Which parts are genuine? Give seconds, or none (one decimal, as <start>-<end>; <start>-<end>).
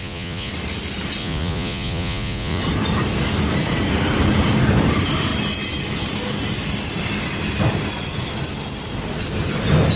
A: 0.5-1.2; 2.6-10.0